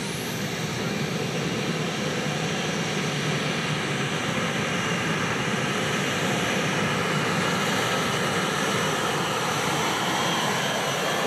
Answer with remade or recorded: remade